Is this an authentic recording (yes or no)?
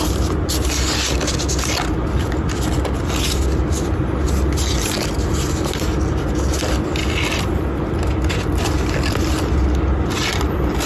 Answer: yes